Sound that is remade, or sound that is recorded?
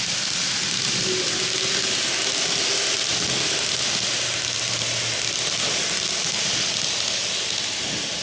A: recorded